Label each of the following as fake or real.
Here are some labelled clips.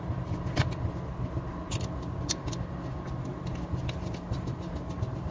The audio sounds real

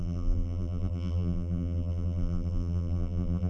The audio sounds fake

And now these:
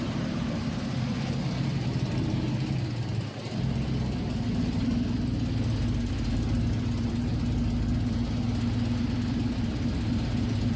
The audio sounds real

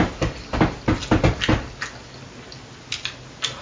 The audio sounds real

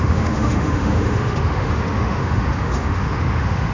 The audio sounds fake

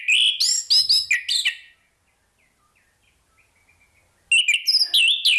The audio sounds real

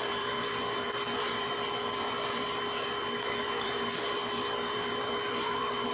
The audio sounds fake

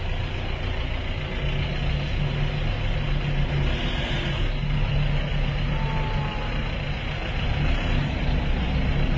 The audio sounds real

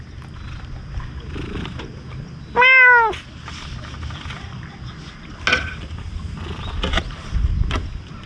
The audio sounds real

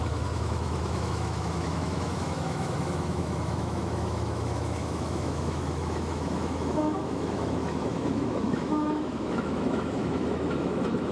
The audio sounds fake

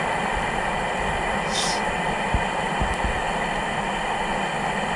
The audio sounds real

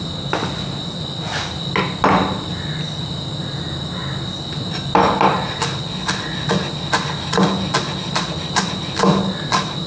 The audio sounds real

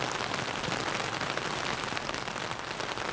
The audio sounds real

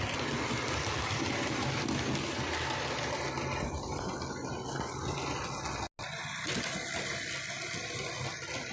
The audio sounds real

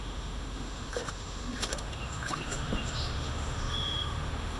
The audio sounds fake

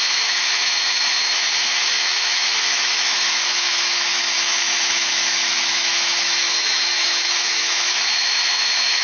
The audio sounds fake